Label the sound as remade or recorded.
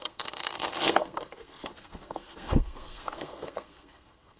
remade